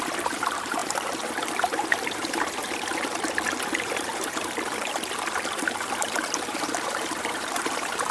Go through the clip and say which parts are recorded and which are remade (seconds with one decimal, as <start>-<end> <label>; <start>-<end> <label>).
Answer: 0.0-8.1 remade